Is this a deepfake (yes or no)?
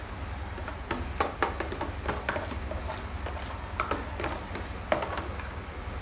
no